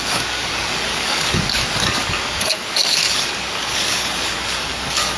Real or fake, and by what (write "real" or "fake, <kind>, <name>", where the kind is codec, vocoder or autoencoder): fake, codec, DAC